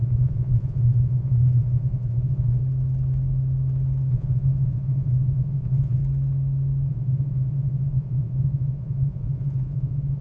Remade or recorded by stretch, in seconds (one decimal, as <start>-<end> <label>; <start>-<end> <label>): 0.0-2.6 remade; 2.6-4.1 recorded; 4.1-6.0 remade; 6.0-6.9 recorded; 6.9-10.2 remade